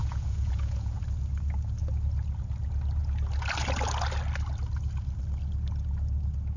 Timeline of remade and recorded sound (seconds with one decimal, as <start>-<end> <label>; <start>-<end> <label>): 0.0-1.0 remade; 1.0-6.6 recorded